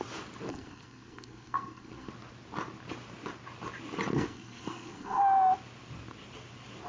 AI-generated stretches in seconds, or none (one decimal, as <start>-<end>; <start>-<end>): 0.5-2.1; 4.1-5.2